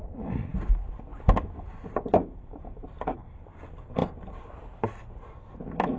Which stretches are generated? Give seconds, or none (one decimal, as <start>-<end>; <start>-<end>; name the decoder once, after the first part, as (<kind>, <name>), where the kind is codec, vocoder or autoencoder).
none